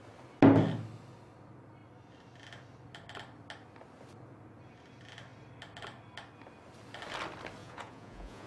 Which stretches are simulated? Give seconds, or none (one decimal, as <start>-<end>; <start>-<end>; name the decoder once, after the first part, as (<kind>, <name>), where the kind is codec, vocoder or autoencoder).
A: 7.6-8.5 (vocoder, Vocos)